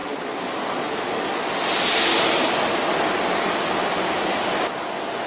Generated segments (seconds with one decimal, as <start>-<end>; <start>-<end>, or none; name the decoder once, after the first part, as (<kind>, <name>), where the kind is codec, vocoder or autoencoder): none